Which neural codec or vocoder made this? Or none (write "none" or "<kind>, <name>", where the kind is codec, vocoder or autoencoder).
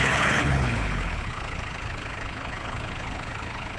codec, HILCodec